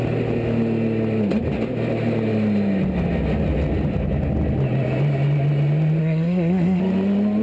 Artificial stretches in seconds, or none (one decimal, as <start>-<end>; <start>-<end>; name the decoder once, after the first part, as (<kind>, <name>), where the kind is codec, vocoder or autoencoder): 6.0-6.8 (codec, SNAC)